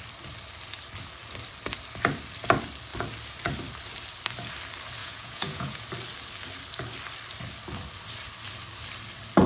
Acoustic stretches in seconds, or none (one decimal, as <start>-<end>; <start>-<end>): 0.0-5.0; 5.8-9.5